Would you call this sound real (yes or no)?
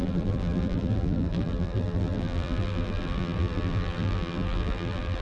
no